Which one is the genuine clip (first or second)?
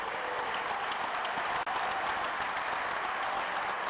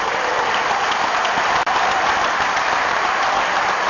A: first